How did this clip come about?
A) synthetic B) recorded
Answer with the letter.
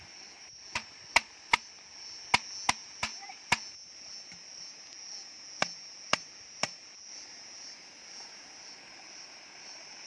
B